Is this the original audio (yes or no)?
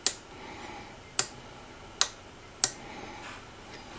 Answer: yes